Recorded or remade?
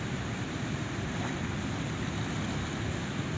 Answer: recorded